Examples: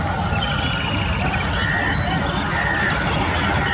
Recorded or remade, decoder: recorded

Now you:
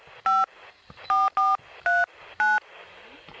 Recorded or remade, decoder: recorded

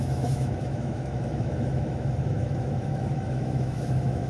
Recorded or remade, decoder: remade, autoencoder, DAC-VAE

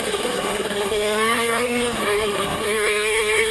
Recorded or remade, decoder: remade, codec, SNAC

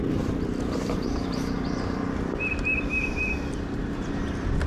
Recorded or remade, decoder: remade, vocoder, BigVGAN v2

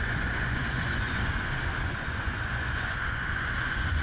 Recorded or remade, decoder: remade, vocoder, Vocos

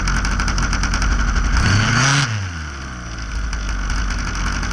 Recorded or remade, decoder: recorded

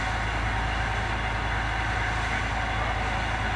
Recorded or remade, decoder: recorded